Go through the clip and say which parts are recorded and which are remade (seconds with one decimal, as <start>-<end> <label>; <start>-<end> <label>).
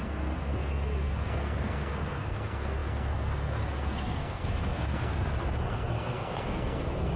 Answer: 0.0-7.2 remade